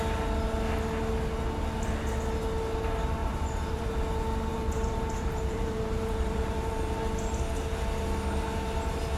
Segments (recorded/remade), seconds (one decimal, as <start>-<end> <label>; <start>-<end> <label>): 0.0-3.2 recorded; 3.2-3.9 remade; 3.9-4.5 recorded; 4.5-7.0 remade; 7.0-9.2 recorded